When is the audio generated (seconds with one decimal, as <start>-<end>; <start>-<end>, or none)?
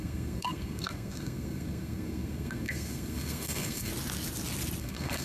0.0-3.9; 4.8-5.2